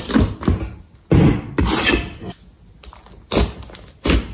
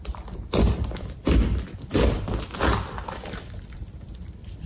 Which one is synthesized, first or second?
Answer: second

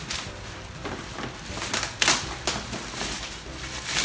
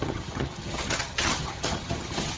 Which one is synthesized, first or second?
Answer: second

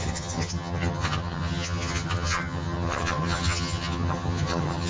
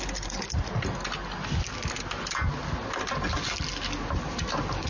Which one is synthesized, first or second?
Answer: first